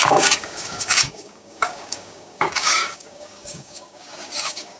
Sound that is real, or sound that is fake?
fake